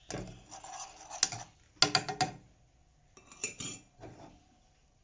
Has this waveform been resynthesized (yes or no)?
no